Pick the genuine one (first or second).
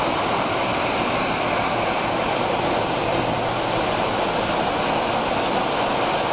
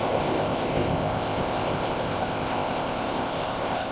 first